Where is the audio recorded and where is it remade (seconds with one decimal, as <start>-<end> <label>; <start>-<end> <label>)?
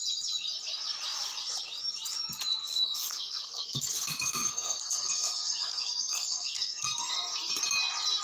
0.0-2.6 recorded; 2.6-7.5 remade; 7.5-8.2 recorded